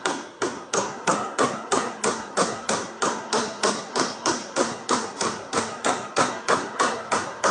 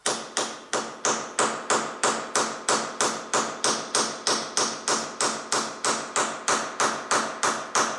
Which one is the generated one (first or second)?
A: first